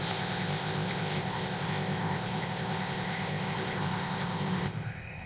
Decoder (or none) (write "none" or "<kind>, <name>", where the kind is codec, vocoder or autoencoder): codec, ZipCodec